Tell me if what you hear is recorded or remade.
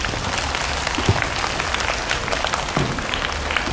recorded